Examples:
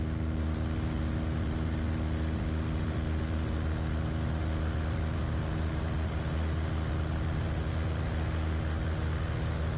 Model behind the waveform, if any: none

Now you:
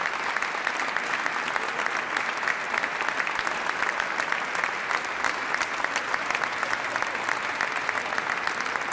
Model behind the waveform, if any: none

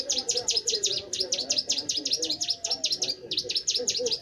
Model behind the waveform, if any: none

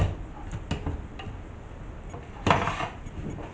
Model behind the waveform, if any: none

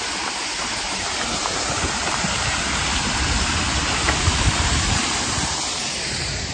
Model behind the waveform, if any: vocoder, BigVGAN v2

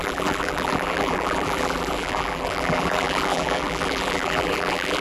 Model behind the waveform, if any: vocoder, BigVGAN v2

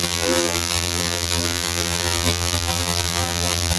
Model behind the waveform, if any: vocoder, BigVGAN v2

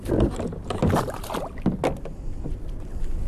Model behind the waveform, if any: none